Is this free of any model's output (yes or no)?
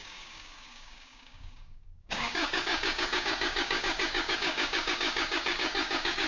no